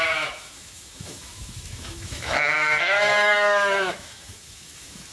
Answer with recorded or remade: remade